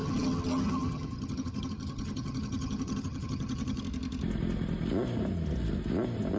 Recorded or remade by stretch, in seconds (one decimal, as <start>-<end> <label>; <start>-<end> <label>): 0.0-3.8 remade; 3.8-6.4 recorded